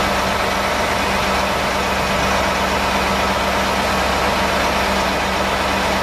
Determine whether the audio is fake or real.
real